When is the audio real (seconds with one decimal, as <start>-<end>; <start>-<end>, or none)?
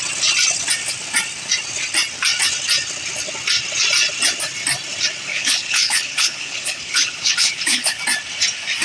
0.0-5.3; 8.0-8.8